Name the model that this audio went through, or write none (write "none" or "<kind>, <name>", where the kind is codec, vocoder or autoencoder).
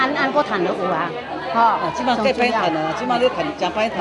none